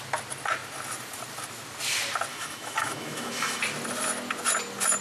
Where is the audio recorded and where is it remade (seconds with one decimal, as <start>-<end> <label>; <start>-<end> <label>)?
0.0-2.3 recorded; 2.3-3.6 remade; 3.6-5.0 recorded